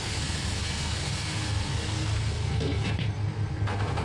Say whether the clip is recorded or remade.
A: remade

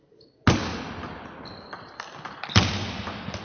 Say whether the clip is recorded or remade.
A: recorded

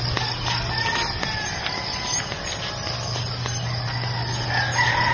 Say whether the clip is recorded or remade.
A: recorded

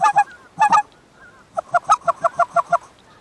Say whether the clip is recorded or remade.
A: recorded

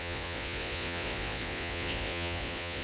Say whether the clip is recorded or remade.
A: remade